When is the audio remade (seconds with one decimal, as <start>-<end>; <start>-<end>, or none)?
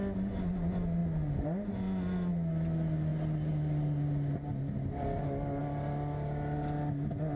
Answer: none